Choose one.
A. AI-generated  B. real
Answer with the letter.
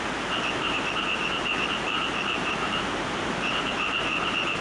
A